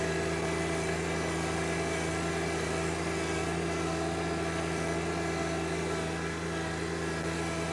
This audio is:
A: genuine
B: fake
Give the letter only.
A